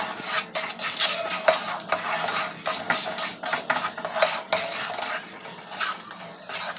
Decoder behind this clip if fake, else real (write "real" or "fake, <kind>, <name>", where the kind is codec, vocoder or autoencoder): real